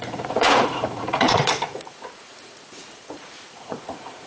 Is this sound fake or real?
fake